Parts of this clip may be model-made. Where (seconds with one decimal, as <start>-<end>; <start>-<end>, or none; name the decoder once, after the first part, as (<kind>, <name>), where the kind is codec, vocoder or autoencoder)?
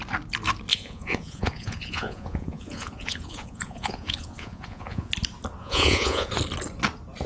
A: 0.7-5.1 (vocoder, Vocos); 5.6-6.3